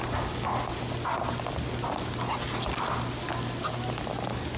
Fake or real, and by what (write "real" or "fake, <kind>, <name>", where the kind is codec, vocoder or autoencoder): real